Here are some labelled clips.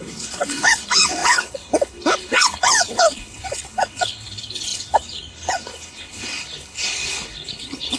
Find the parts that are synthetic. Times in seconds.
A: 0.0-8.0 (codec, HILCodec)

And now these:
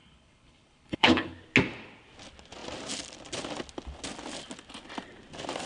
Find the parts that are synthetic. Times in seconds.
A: 0.0-1.3 (codec, HILCodec)